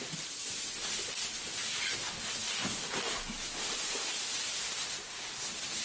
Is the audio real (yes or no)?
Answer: yes